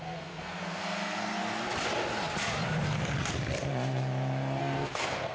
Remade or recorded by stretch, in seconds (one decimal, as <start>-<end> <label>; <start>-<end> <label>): 0.0-1.4 remade; 1.4-4.6 recorded; 4.6-5.3 remade